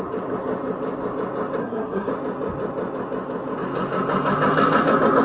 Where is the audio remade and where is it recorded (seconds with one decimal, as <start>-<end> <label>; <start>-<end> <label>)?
0.0-1.6 recorded; 1.6-2.1 remade; 2.1-5.2 recorded

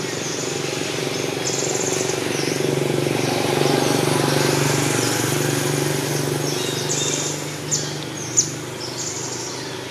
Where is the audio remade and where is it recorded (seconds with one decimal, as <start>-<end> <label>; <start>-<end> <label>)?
0.0-9.9 recorded